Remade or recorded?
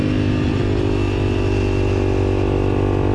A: recorded